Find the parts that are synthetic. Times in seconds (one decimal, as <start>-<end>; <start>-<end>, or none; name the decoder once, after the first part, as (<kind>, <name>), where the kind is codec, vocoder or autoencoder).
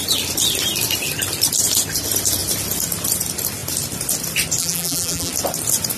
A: 4.6-5.3 (vocoder, BigVGAN v2)